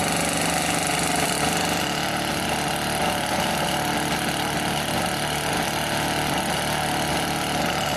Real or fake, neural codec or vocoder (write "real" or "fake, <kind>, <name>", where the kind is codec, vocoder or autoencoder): real